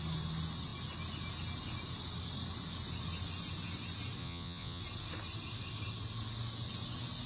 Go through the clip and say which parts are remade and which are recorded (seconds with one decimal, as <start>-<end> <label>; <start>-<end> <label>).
0.0-4.2 recorded; 4.2-4.8 remade; 4.8-7.3 recorded